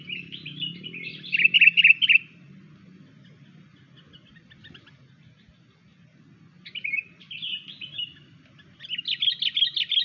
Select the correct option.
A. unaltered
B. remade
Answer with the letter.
A